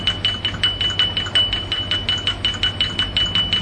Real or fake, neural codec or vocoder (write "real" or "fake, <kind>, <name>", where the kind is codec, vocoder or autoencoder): real